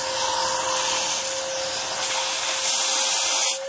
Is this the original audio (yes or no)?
yes